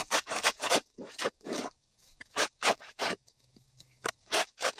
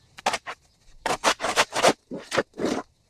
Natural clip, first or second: second